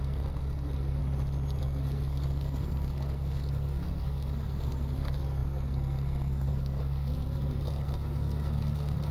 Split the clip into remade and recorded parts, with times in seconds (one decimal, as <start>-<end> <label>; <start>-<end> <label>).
0.0-1.0 remade; 1.0-1.6 recorded; 1.6-9.1 remade